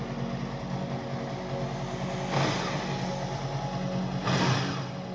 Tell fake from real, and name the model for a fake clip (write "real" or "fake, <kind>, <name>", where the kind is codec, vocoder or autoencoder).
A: real